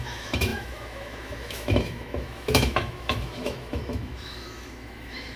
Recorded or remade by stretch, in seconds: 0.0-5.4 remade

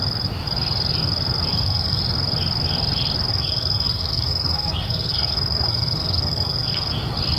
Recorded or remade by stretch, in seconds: 0.0-1.5 recorded; 1.5-2.0 remade; 2.0-3.3 recorded; 3.3-6.9 remade; 6.9-7.4 recorded

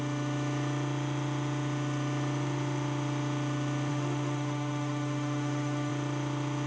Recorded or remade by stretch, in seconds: 0.0-3.9 recorded; 3.9-5.9 remade; 5.9-6.7 recorded